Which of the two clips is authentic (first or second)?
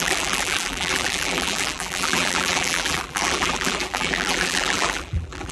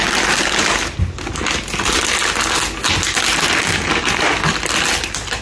second